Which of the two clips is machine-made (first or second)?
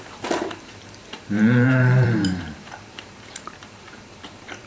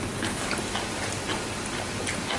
first